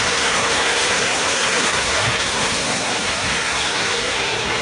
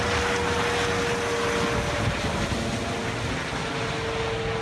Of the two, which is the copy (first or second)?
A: first